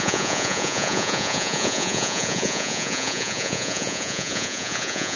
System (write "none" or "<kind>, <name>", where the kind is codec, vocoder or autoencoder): vocoder, Vocos